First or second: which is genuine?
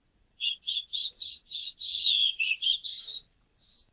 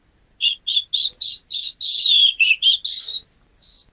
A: second